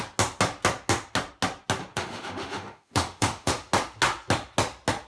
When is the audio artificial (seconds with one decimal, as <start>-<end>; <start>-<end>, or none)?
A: 1.9-3.5